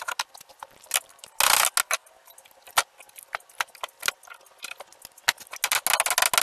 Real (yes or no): yes